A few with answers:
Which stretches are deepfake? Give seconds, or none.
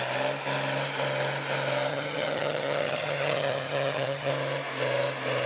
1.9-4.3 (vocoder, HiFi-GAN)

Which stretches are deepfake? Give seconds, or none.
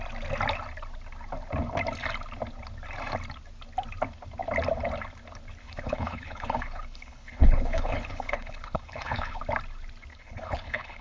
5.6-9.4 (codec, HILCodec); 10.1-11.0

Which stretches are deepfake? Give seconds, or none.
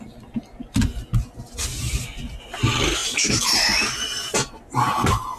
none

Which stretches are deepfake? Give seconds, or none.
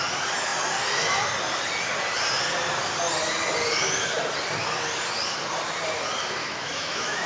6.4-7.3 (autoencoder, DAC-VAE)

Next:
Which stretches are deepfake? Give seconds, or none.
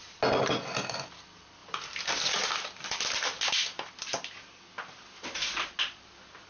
none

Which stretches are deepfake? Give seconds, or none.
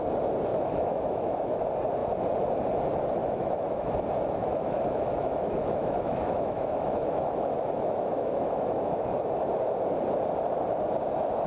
0.5-1.6 (autoencoder, DAC-VAE); 3.2-3.9; 4.4-9.0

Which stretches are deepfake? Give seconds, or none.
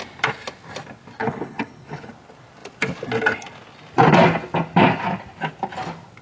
1.2-2.1 (codec, HILCodec)